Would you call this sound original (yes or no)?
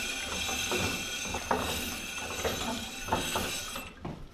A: yes